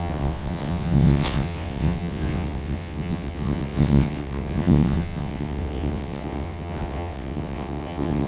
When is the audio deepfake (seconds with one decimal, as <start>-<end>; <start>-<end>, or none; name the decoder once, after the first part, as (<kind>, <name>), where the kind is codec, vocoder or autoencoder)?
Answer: 0.0-8.3 (vocoder, WaveNeXt)